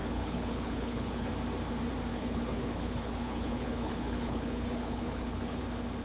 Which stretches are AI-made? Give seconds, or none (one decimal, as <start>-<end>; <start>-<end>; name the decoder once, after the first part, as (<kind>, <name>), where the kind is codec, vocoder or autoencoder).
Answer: 0.0-1.3 (codec, HILCodec); 2.1-5.6